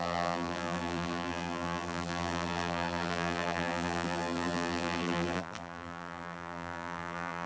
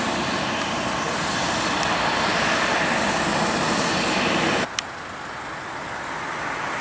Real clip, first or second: second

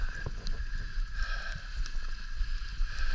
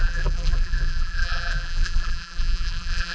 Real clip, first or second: first